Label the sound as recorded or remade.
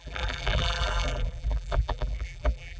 remade